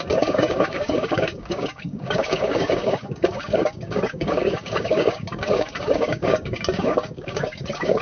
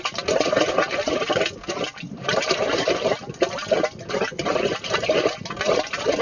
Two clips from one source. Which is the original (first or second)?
second